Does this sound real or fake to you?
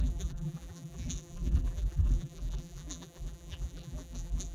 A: fake